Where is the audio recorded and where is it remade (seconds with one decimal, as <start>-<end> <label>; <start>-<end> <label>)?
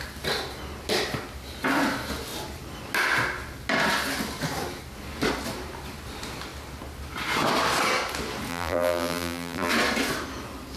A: 0.0-8.5 recorded; 8.5-9.7 remade; 9.7-10.8 recorded